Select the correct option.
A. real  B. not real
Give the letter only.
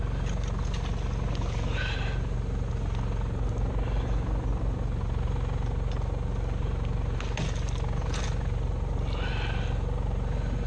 A